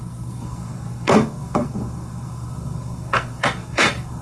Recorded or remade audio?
remade